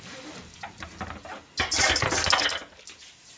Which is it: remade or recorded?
recorded